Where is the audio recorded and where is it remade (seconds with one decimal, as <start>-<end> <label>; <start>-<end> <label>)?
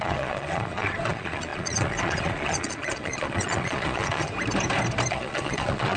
0.0-4.3 remade; 4.3-5.1 recorded; 5.1-6.0 remade